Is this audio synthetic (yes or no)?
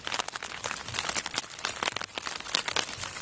no